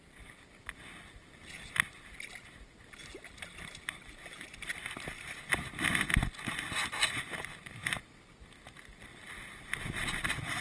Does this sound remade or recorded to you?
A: recorded